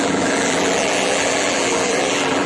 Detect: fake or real fake